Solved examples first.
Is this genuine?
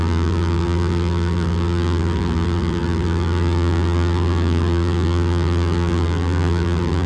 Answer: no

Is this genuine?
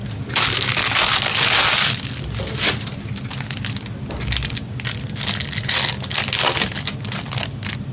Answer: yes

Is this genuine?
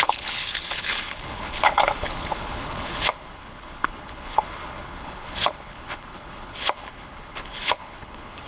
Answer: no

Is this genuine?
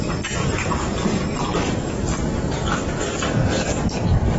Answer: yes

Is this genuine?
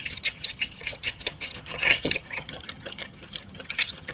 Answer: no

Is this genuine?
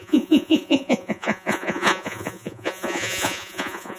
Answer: no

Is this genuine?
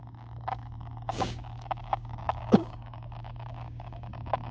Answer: no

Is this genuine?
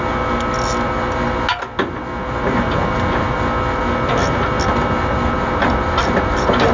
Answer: yes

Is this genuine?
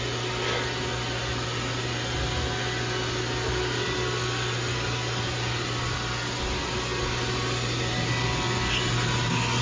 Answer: yes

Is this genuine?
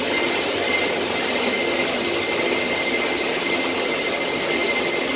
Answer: yes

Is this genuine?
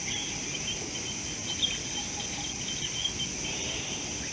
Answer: yes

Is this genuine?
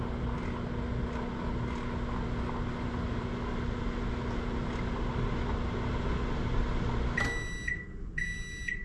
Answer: yes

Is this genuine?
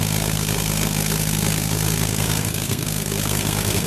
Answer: no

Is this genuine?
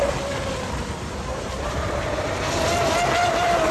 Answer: yes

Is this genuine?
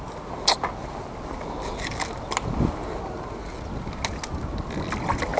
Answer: yes